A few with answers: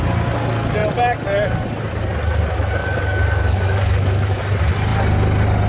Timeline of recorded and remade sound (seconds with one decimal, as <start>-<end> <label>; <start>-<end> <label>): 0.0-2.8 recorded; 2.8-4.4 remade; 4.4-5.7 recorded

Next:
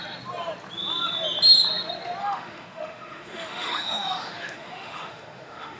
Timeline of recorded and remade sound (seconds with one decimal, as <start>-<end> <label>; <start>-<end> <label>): 0.0-2.2 recorded; 2.2-5.8 remade

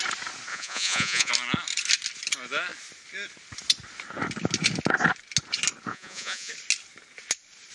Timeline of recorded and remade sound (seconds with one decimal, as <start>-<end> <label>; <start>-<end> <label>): 0.0-0.5 recorded; 0.5-1.3 remade; 1.3-5.9 recorded; 5.9-6.5 remade; 6.5-7.7 recorded

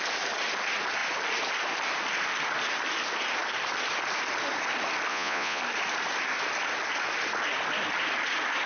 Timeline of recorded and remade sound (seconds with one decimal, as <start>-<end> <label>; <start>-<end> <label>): 0.0-5.1 recorded; 5.1-5.6 remade; 5.6-8.7 recorded

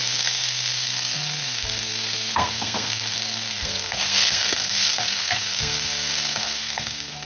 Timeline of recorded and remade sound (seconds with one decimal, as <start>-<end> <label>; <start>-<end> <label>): 0.0-7.2 remade

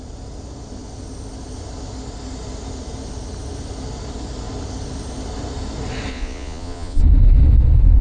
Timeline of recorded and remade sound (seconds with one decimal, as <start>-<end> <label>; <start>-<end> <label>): 0.0-6.1 recorded; 6.1-7.0 remade; 7.0-8.0 recorded

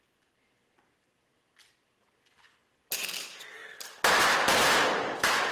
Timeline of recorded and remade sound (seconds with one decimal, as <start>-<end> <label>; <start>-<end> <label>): 0.0-5.5 recorded